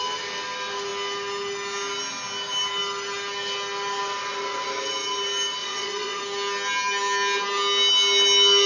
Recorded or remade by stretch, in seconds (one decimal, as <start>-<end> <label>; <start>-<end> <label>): 0.0-5.6 recorded; 5.6-6.2 remade; 6.2-8.7 recorded